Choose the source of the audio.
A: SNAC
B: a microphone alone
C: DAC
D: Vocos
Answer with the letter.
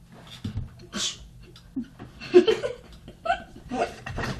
B